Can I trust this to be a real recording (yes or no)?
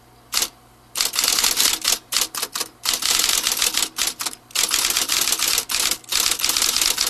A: yes